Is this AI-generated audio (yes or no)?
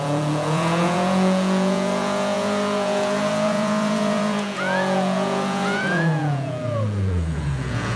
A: yes